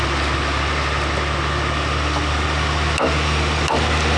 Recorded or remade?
recorded